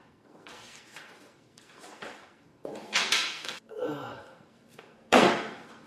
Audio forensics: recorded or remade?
remade